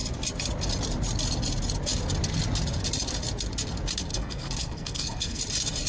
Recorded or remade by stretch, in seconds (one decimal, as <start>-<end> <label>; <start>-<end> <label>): 0.0-4.1 recorded; 4.1-5.4 remade; 5.4-5.9 recorded